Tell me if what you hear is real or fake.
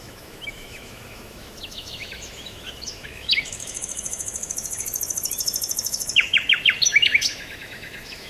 fake